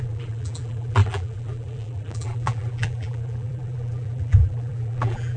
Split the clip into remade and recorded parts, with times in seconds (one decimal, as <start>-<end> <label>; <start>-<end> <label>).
0.0-5.4 remade